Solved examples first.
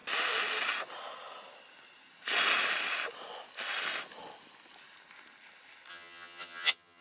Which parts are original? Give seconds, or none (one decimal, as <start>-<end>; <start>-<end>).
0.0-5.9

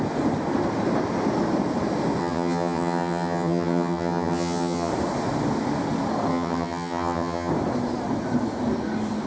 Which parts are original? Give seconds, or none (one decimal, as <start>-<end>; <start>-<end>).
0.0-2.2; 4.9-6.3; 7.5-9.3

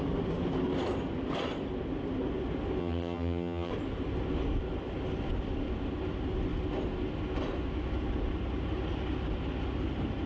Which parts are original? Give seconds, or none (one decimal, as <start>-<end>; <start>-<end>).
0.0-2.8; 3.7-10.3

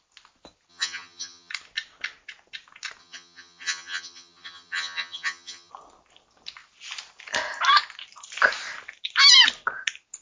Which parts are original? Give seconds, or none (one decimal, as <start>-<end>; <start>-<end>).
0.0-0.7; 1.5-3.0; 5.7-10.2

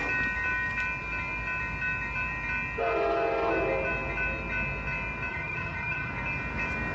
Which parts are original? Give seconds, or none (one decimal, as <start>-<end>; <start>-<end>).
0.0-5.3; 6.1-6.9

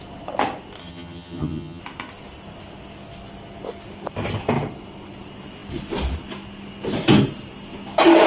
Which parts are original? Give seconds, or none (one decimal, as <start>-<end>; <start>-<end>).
0.0-0.8; 1.8-8.3

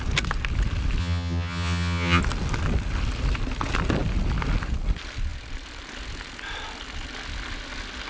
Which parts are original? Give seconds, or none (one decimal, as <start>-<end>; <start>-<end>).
0.0-1.0; 2.2-8.1

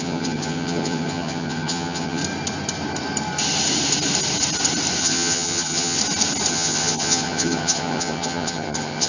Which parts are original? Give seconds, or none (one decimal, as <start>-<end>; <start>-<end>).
2.2-5.0; 6.0-6.5